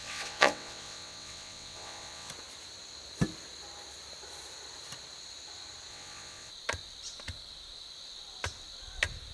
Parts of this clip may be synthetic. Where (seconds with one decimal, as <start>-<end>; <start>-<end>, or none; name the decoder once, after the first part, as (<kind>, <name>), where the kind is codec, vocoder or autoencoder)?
0.0-2.3 (vocoder, WaveNeXt); 5.9-6.5